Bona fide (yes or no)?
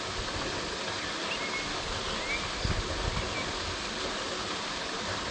yes